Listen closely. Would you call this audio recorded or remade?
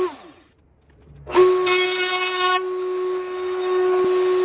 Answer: recorded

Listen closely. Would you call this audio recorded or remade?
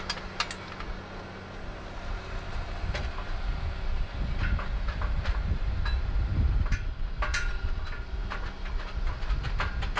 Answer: recorded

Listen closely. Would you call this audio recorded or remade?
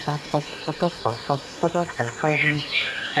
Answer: remade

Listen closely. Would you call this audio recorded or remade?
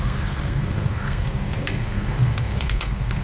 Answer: remade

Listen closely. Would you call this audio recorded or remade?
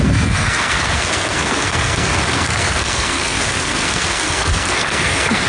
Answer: remade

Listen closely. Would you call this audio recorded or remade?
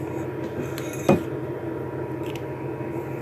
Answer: recorded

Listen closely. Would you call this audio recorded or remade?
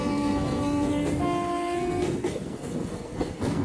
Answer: remade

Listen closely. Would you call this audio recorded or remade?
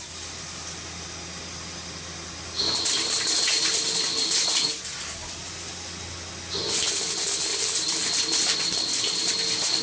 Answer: recorded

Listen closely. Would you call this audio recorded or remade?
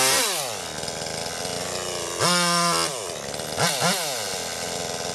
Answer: recorded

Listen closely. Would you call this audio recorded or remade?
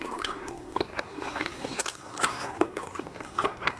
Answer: remade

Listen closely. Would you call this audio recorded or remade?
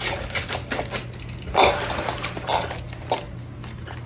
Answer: recorded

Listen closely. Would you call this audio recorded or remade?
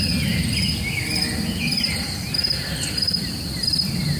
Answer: recorded